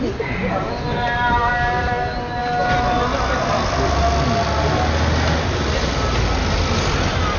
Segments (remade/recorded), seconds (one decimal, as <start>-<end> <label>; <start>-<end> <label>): 0.0-7.4 recorded